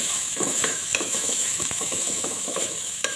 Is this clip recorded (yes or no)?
no